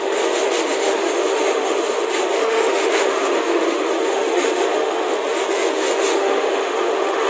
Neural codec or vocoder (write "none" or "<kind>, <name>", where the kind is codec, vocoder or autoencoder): autoencoder, DAC-VAE